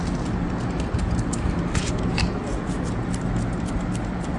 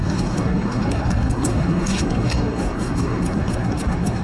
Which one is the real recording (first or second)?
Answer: first